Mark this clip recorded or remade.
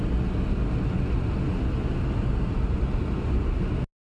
recorded